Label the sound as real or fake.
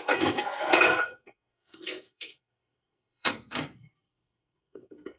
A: fake